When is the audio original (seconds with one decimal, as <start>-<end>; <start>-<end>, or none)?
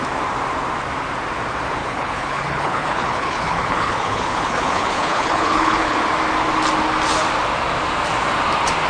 0.0-1.8; 6.0-8.9